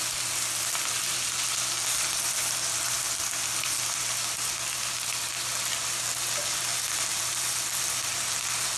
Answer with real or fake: real